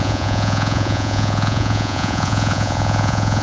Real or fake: fake